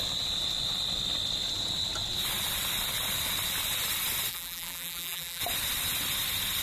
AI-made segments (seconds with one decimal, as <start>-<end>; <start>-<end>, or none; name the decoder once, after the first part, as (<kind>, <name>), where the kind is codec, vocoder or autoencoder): 4.3-5.4 (vocoder, BigVGAN v2)